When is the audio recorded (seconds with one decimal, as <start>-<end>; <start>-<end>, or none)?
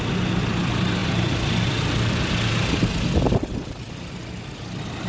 0.0-5.1